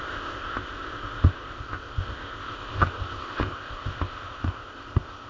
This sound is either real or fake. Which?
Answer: fake